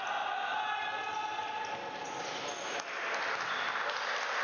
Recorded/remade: recorded